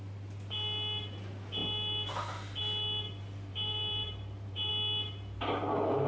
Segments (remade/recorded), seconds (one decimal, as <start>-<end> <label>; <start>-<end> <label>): 0.0-3.5 recorded; 3.5-4.7 remade; 4.7-6.1 recorded